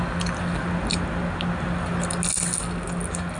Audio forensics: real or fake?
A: real